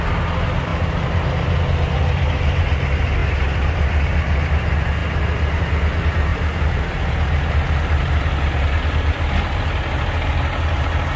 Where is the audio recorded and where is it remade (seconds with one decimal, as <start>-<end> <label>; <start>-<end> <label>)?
0.0-3.2 recorded; 3.2-3.9 remade; 3.9-6.3 recorded; 6.3-7.0 remade; 7.0-11.2 recorded